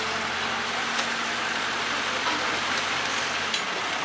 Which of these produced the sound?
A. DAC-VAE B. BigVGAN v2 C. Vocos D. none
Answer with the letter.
D